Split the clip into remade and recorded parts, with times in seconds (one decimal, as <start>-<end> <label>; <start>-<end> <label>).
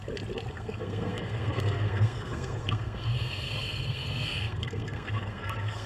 0.0-0.5 recorded; 0.5-5.9 remade